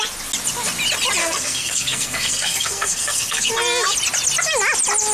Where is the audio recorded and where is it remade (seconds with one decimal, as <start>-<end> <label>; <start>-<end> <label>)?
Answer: 0.0-1.2 recorded; 1.2-3.5 remade; 3.5-5.1 recorded